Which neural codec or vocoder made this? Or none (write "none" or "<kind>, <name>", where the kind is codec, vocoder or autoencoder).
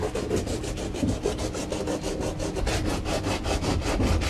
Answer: none